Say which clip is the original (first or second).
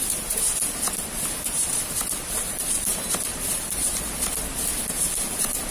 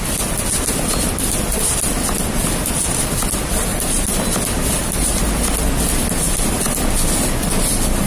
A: second